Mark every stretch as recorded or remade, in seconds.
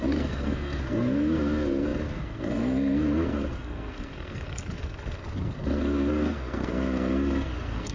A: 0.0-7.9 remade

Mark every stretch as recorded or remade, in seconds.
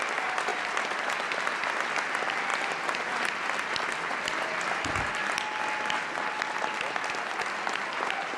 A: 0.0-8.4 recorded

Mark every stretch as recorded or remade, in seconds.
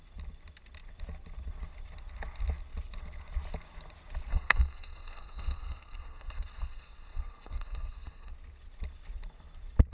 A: 0.0-4.3 recorded; 4.3-8.3 remade; 8.3-9.9 recorded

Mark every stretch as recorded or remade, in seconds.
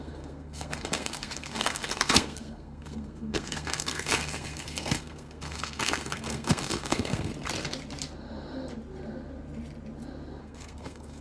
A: 0.0-7.3 remade; 7.3-10.4 recorded; 10.4-11.2 remade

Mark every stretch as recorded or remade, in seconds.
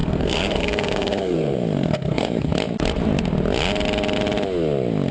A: 0.0-2.5 remade; 2.5-5.1 recorded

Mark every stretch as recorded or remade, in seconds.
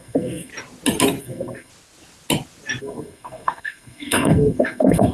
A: 0.0-0.5 remade; 0.5-1.2 recorded; 1.2-1.7 remade; 1.7-2.8 recorded; 2.8-5.1 remade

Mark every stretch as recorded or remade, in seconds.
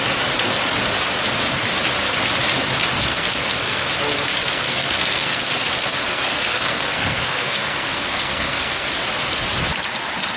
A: 0.0-3.1 recorded; 3.1-3.9 remade; 3.9-4.5 recorded; 4.5-5.4 remade; 5.4-6.1 recorded; 6.1-8.9 remade; 8.9-10.4 recorded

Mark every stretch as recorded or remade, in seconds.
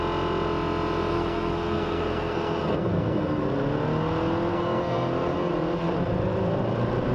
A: 0.0-1.1 recorded; 1.1-3.4 remade; 3.4-4.5 recorded; 4.5-5.5 remade; 5.5-7.1 recorded